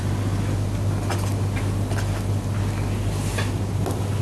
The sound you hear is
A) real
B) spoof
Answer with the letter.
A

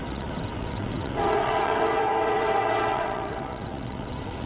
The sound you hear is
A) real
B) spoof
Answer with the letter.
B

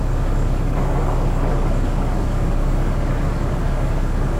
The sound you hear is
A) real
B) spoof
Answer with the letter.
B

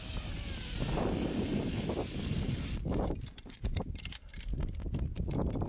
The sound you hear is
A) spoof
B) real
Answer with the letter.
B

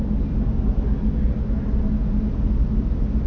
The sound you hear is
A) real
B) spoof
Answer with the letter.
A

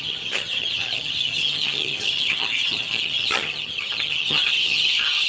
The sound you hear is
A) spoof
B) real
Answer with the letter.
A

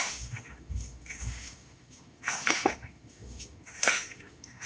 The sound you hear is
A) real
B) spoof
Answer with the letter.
B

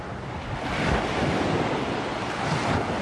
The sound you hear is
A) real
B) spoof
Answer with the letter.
A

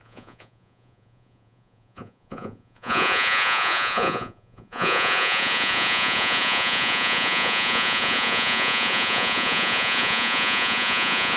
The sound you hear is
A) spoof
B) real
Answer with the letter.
A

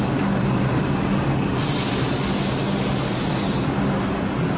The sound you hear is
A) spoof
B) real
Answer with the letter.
B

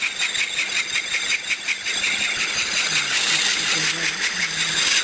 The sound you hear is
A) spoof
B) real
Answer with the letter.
B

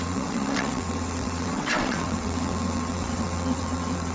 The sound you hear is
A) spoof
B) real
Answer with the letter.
A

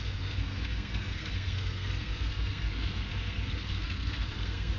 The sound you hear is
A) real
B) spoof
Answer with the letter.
B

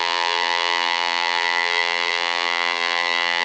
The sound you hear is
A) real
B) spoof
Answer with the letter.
B